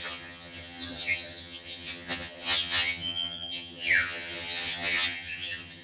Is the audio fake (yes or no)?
yes